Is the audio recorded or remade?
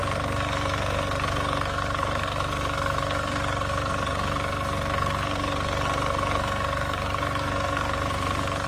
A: remade